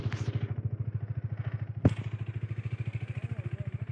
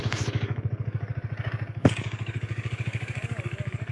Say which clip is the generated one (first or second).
second